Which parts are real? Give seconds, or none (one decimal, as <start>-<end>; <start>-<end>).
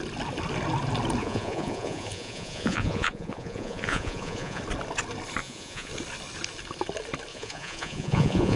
0.0-1.2; 4.6-5.4; 5.9-7.3